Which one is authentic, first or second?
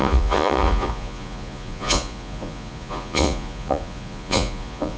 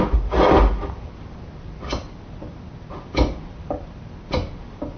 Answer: second